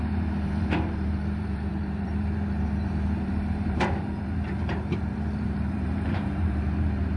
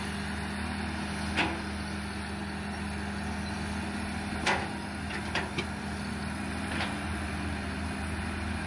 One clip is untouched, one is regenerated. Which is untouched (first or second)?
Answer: second